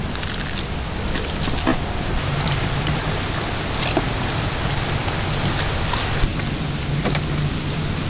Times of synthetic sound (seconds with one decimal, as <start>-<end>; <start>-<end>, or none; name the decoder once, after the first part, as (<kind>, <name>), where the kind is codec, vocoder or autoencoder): none